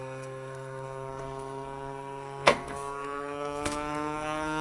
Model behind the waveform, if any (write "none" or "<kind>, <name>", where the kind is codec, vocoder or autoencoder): codec, SNAC